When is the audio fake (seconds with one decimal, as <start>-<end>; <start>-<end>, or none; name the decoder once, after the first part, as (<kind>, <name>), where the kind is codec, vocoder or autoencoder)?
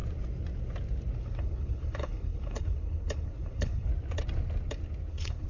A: 1.2-3.9 (codec, HILCodec); 5.1-5.5